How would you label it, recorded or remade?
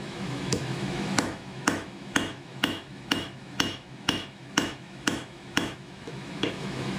remade